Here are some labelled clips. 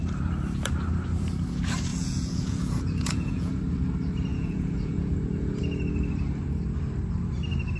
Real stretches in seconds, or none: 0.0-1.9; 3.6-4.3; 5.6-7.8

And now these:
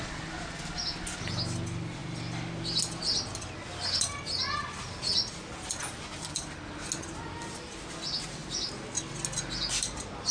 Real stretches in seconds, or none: 0.0-10.3

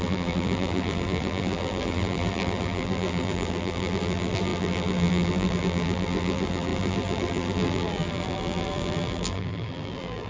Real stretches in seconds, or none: none

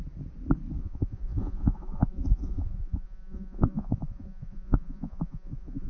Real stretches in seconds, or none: 0.0-0.8

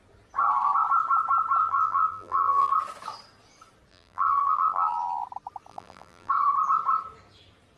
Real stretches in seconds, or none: 0.0-1.6; 2.7-3.9; 5.0-5.7; 6.3-7.8

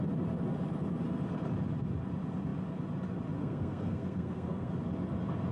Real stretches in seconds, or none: 0.0-3.4; 4.7-5.5

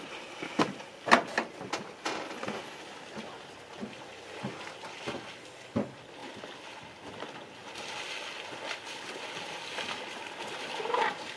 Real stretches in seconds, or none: 0.0-11.4

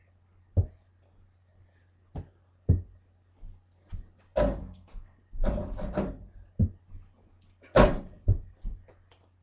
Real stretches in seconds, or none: 0.0-4.6; 5.2-9.4